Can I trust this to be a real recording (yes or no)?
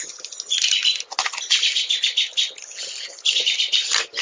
yes